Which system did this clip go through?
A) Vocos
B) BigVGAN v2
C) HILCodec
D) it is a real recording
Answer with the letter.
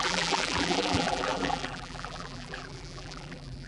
B